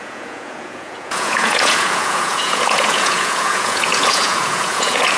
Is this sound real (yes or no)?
no